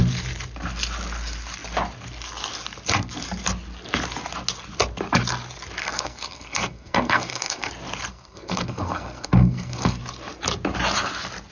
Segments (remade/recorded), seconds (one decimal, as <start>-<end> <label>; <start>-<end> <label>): 0.0-5.8 recorded; 5.8-7.7 remade; 7.7-8.1 recorded; 8.1-10.0 remade; 10.0-11.5 recorded